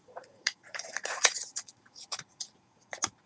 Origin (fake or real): fake